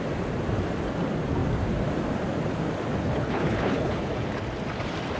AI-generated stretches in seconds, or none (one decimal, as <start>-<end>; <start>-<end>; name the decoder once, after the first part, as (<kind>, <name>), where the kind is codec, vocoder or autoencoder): 3.0-4.1 (codec, HILCodec)